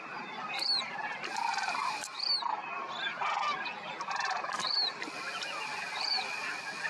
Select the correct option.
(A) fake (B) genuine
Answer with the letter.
B